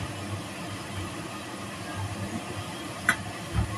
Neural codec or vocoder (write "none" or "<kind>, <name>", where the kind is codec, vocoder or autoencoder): none